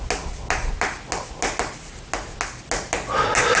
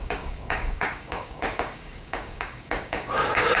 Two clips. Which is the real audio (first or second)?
first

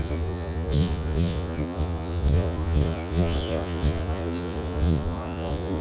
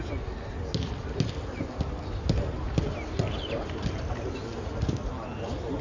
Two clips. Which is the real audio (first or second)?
second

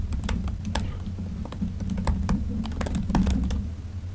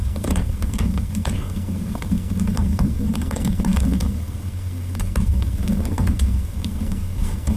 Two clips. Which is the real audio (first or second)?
first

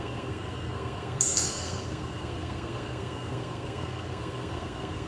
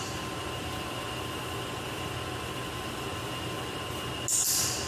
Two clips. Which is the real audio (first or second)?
second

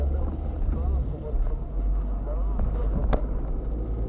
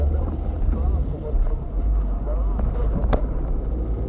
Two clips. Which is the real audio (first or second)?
first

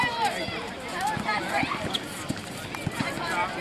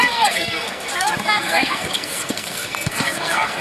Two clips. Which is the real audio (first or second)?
first